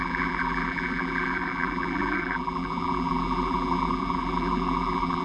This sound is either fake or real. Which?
fake